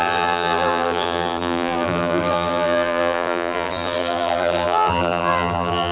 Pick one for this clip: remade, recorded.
remade